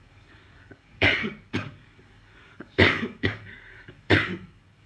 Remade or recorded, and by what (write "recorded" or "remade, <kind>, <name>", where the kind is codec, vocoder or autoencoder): remade, codec, DAC